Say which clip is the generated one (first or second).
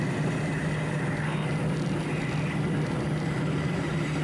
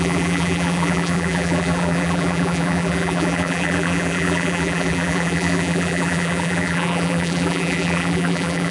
second